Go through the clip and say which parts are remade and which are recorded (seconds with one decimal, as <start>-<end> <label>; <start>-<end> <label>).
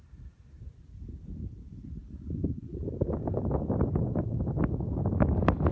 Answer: 0.0-2.0 remade; 2.0-5.0 recorded; 5.0-5.7 remade